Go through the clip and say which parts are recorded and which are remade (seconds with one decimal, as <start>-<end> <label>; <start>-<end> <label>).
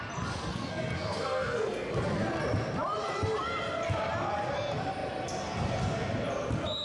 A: 0.0-0.5 recorded; 0.5-1.9 remade; 1.9-6.8 recorded